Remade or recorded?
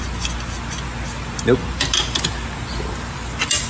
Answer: recorded